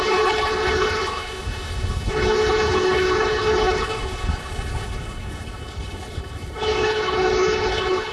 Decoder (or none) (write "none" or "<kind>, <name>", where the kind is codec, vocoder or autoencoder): codec, HILCodec